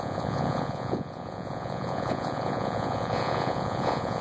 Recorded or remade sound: remade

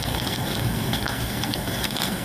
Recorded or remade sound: remade